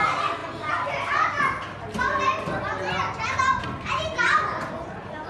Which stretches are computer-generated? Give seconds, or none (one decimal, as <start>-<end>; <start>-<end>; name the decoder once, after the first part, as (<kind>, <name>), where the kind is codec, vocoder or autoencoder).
none